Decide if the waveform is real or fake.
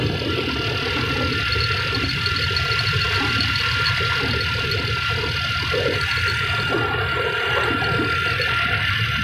real